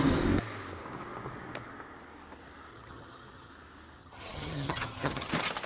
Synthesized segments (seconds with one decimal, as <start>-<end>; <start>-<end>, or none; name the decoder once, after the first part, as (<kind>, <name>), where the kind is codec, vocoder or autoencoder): 2.7-3.5 (vocoder, HiFi-GAN); 4.0-5.3